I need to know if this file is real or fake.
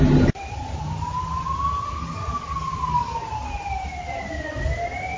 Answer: real